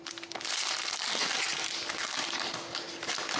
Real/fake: real